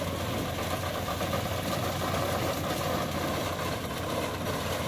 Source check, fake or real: real